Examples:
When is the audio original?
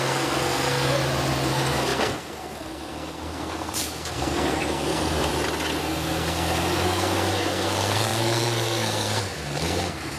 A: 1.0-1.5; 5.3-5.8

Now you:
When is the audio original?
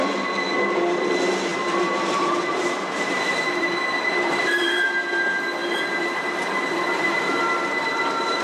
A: 0.0-1.5; 4.9-5.6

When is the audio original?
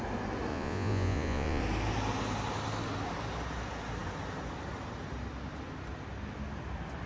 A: 0.0-0.5; 1.6-7.1